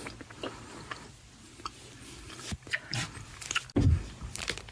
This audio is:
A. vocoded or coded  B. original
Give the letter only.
B